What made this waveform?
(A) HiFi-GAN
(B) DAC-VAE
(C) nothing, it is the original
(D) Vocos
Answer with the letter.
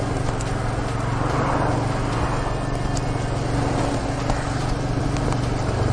C